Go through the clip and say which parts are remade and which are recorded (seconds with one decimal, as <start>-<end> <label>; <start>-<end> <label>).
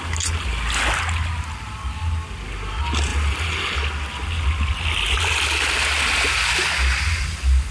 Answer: 0.0-7.7 recorded